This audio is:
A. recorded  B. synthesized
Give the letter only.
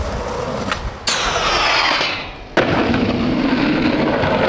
A